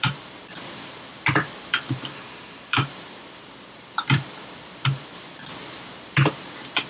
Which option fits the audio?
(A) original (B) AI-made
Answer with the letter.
B